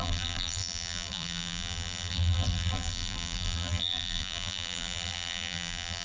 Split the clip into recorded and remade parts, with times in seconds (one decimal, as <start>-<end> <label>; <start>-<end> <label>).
0.0-6.0 remade